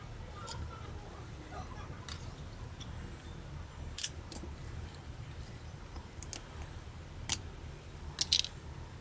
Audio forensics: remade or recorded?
recorded